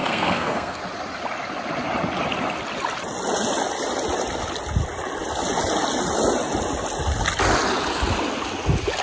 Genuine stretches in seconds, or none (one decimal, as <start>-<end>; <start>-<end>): 0.8-9.0

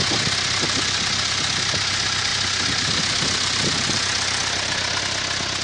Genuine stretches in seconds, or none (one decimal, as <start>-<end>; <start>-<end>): 0.0-5.6

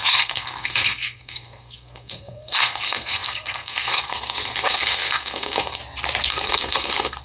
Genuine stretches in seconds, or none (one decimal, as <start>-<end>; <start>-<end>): 5.8-6.3

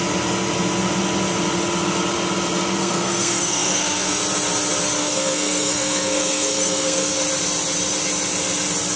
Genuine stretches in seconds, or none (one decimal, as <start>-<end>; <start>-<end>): 0.0-2.8; 4.2-5.0; 7.1-9.0

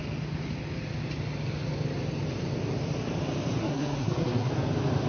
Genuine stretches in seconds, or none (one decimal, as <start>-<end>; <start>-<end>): 0.0-3.6; 4.5-5.1

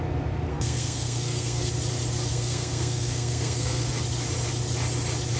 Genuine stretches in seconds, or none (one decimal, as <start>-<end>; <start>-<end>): 0.0-0.5; 1.7-2.3; 3.9-5.4

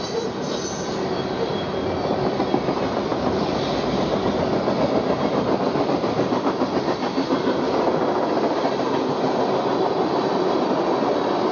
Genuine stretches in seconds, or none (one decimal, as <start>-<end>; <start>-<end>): 0.0-11.5

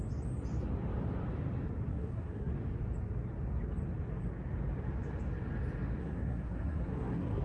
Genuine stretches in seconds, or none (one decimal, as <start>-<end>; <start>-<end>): 0.0-1.9; 2.5-6.0